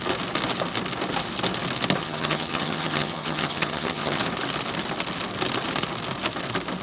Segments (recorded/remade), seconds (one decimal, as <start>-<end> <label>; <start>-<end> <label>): 0.0-2.0 recorded; 2.0-4.2 remade; 4.2-6.8 recorded